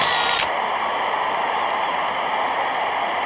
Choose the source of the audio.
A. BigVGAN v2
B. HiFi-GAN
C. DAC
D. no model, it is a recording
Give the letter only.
D